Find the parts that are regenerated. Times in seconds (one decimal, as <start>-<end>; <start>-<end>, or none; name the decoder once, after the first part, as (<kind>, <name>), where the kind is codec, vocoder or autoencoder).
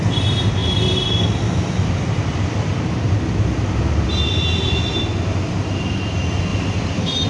0.6-4.8 (vocoder, BigVGAN v2); 6.5-7.3